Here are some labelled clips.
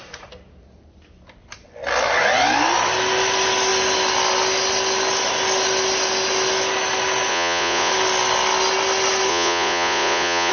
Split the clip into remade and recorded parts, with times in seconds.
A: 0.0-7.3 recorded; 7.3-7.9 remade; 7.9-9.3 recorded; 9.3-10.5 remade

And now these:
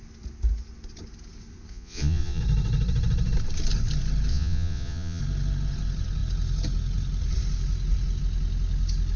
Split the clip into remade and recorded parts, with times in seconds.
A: 0.0-1.7 recorded; 1.7-2.4 remade; 2.4-4.3 recorded; 4.3-5.2 remade; 5.2-9.2 recorded

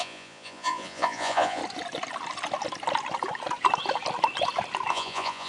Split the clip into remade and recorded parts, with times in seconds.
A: 0.0-1.6 remade; 1.6-4.9 recorded; 4.9-5.5 remade

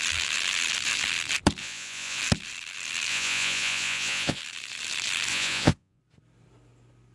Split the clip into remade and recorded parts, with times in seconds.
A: 0.0-1.6 recorded; 1.6-2.2 remade; 2.2-3.1 recorded; 3.1-4.4 remade; 4.4-5.3 recorded; 5.3-6.0 remade; 6.0-7.1 recorded

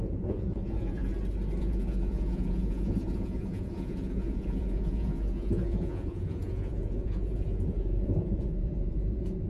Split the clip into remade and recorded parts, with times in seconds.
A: 0.0-1.1 remade; 1.1-1.6 recorded; 1.6-9.5 remade

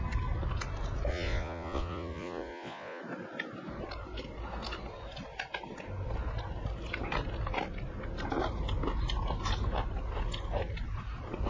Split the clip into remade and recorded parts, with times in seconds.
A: 0.0-1.1 recorded; 1.1-3.0 remade; 3.0-11.5 recorded

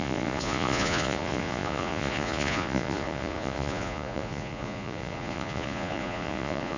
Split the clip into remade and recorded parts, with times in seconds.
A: 0.0-6.8 remade

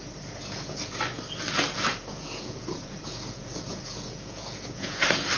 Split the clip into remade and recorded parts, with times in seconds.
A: 0.0-0.9 remade; 0.9-1.9 recorded; 1.9-5.0 remade; 5.0-5.4 recorded